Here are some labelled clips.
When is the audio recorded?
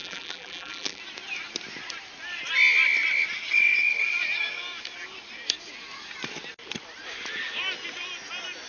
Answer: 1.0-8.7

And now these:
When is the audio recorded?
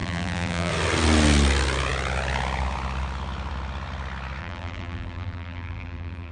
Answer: 0.7-4.4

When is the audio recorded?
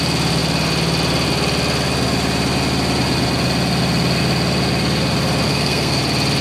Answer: 0.0-5.5; 6.0-6.4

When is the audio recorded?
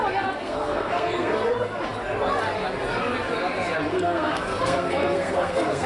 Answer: 0.0-0.4; 1.5-3.9